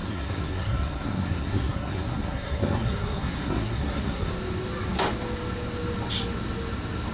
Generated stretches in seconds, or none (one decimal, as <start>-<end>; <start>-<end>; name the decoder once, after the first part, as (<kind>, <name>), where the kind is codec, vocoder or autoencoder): 0.0-4.3 (codec, SNAC)